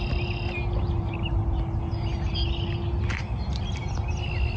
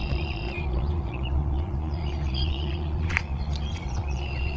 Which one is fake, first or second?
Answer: second